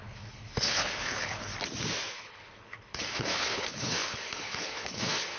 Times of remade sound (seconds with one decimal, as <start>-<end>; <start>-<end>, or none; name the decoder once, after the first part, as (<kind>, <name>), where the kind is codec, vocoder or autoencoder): 0.0-1.5 (codec, HILCodec); 2.1-5.4